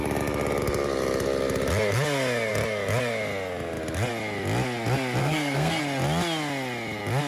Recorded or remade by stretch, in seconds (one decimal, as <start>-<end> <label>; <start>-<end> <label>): 0.0-5.2 recorded; 5.2-5.8 remade; 5.8-7.3 recorded